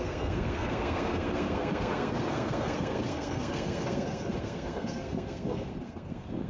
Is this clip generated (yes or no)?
yes